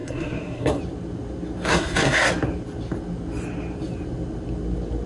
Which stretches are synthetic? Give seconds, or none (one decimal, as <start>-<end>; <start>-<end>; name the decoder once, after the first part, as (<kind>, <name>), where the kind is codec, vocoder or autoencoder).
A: 0.0-0.8 (codec, SNAC); 1.7-2.3